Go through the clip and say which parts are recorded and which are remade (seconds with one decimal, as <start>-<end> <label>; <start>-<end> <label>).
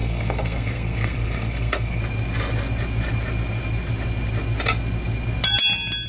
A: 0.0-2.0 remade; 2.0-6.1 recorded